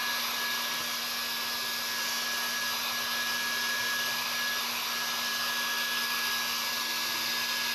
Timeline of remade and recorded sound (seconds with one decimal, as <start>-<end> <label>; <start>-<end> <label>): 0.0-7.7 recorded